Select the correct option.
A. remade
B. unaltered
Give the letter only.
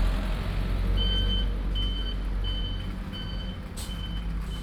B